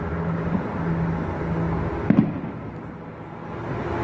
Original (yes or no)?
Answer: yes